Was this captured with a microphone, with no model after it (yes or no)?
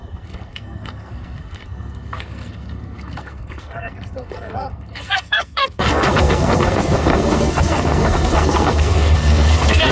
no